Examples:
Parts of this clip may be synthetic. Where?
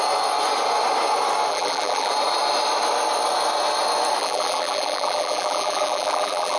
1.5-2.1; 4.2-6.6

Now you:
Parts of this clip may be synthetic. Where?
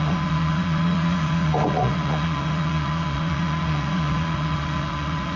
0.0-5.4